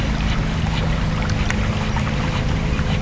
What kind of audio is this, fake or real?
real